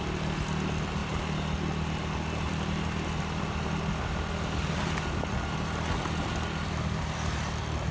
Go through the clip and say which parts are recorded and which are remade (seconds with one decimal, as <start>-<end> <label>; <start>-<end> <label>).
0.0-7.9 recorded

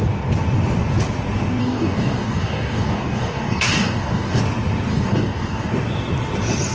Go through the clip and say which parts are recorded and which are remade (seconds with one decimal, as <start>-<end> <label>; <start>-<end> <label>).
0.0-1.6 recorded; 1.6-4.4 remade; 4.4-4.9 recorded; 4.9-5.7 remade; 5.7-6.7 recorded

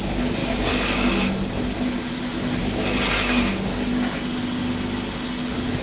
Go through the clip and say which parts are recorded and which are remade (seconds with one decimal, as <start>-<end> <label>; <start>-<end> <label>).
0.0-0.4 recorded; 0.4-1.1 remade; 1.1-2.6 recorded; 2.6-3.9 remade; 3.9-5.8 recorded

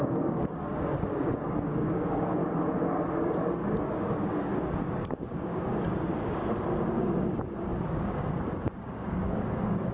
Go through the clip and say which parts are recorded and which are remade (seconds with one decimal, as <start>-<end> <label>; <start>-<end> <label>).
0.0-2.4 remade; 2.4-3.2 recorded; 3.2-6.4 remade; 6.4-6.9 recorded; 6.9-9.9 remade

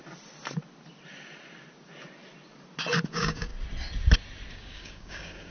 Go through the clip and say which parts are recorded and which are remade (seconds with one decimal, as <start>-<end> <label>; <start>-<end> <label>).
0.0-3.1 recorded; 3.1-3.5 remade; 3.5-4.5 recorded; 4.5-5.5 remade

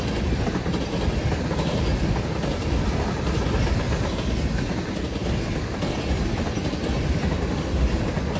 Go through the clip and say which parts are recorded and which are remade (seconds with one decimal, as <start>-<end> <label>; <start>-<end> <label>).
0.0-8.4 recorded

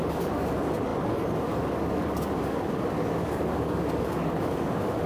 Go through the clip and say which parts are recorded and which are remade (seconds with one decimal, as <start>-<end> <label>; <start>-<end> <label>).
0.0-5.1 remade

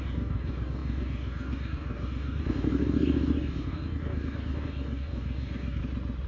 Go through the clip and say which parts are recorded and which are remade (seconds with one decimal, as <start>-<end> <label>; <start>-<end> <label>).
0.0-5.8 remade; 5.8-6.3 recorded